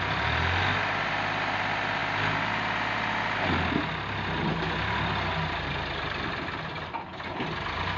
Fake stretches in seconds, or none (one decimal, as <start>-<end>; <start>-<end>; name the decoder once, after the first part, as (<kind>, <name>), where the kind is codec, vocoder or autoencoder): none